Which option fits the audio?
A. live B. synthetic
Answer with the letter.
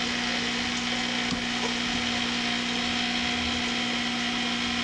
A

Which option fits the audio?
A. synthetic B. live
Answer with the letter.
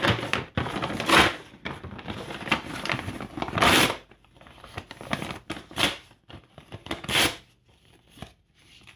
A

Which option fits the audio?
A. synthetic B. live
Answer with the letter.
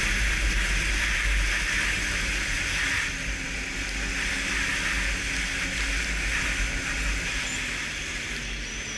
B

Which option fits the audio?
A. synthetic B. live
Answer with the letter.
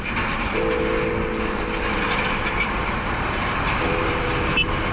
A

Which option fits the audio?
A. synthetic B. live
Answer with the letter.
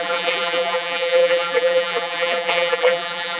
A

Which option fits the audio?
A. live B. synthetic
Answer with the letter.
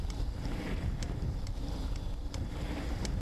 B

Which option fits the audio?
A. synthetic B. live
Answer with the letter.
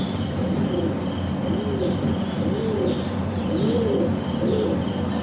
B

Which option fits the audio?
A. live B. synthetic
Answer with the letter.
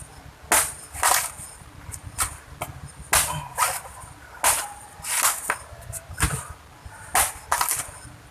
A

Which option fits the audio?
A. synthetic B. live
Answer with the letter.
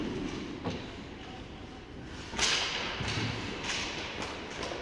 B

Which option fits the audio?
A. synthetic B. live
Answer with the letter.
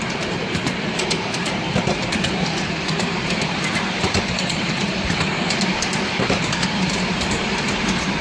A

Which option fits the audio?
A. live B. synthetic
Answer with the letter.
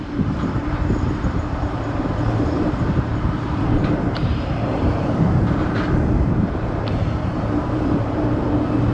B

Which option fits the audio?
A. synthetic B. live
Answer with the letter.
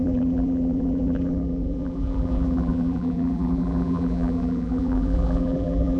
A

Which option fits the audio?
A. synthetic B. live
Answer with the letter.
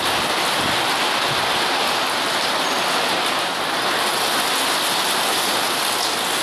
B